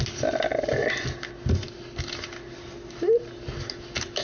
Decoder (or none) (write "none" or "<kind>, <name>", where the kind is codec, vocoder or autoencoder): none